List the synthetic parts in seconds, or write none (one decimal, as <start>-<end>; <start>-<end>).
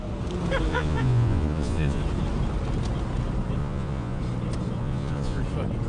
0.7-2.0; 3.6-4.2; 4.8-5.4